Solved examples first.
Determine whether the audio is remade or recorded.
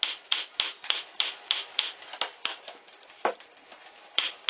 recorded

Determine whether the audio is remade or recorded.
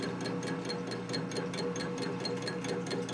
recorded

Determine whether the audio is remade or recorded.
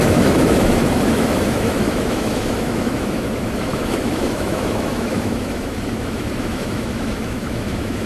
remade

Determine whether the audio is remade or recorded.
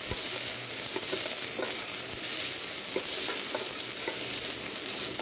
recorded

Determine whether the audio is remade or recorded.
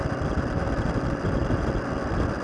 recorded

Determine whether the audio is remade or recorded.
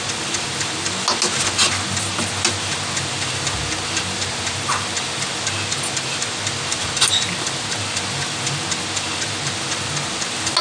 recorded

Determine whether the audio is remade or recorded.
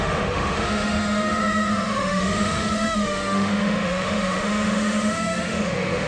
remade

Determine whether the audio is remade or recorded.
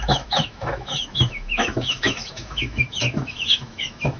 remade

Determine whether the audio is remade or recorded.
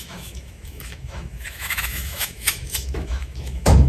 remade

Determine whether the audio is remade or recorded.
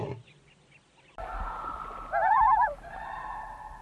recorded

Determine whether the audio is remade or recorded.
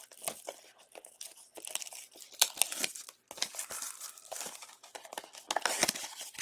recorded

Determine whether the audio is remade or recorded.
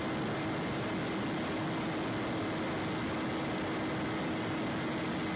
recorded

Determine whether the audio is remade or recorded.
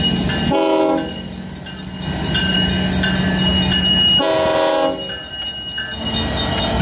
recorded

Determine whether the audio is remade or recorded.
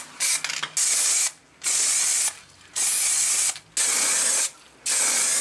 recorded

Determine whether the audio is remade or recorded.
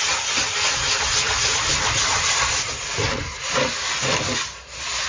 recorded